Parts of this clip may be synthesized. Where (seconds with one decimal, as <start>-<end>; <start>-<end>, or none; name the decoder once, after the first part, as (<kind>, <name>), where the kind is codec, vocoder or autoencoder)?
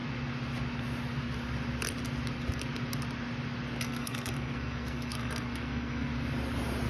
3.8-6.1 (codec, SNAC)